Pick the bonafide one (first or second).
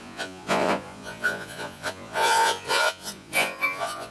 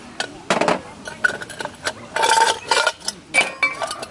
second